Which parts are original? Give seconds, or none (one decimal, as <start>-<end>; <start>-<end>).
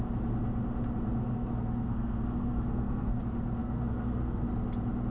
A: 0.0-1.2; 3.2-3.6; 4.5-5.1